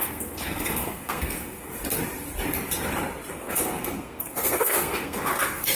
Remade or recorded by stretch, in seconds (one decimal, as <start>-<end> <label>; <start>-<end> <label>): 0.0-1.7 remade; 1.7-3.3 recorded; 3.3-5.8 remade

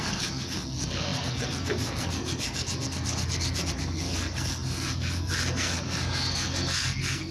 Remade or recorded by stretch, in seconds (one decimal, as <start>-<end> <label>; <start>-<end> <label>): 0.0-7.3 remade

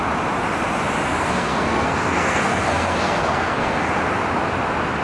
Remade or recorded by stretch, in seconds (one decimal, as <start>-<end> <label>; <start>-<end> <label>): 0.0-1.0 recorded; 1.0-3.9 remade; 3.9-5.0 recorded